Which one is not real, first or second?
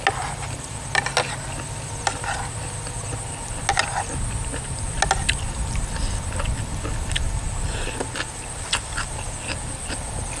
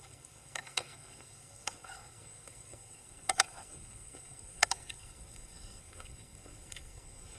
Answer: second